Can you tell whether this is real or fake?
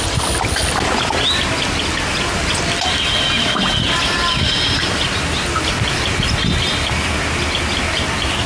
real